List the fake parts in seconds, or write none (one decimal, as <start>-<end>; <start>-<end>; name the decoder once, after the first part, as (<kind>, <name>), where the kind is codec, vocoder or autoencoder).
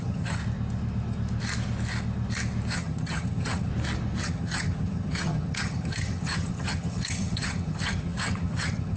0.0-0.4 (vocoder, HiFi-GAN); 2.7-3.7; 4.2-9.0